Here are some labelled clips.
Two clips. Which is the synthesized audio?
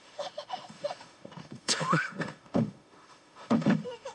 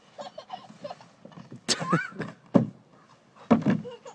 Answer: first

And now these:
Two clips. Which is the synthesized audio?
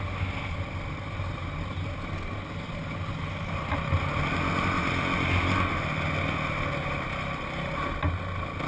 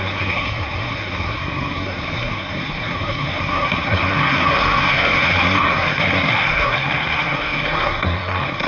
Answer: second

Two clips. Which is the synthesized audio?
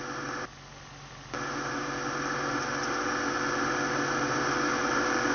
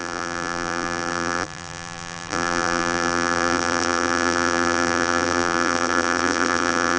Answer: second